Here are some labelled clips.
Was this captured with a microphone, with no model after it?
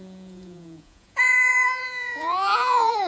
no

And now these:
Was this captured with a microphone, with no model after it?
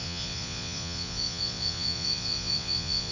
no